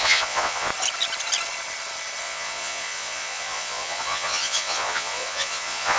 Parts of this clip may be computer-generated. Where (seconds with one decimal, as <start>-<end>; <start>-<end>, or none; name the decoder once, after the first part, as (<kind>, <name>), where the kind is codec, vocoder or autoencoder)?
0.0-0.7 (vocoder, Vocos); 2.2-6.0